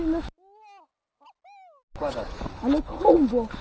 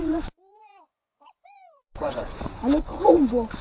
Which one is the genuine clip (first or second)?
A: first